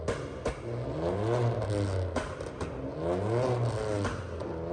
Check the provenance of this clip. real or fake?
real